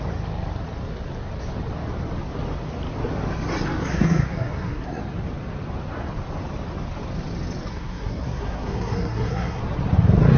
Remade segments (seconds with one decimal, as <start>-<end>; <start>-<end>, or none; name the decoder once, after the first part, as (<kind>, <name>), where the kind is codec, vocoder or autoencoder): 3.9-5.0 (codec, SNAC); 7.7-9.6